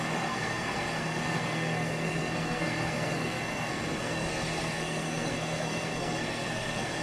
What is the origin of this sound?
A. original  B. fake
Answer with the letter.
B